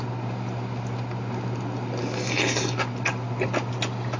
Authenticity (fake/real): real